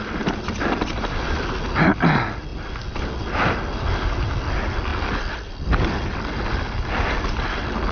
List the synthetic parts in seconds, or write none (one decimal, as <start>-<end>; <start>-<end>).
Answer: none